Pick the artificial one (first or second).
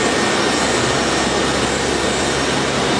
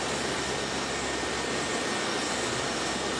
second